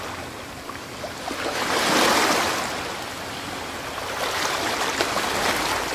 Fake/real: real